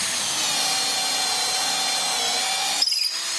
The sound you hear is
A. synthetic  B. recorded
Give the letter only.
B